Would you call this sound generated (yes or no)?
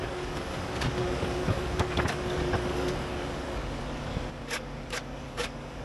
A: yes